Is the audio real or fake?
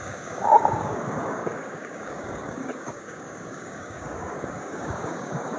fake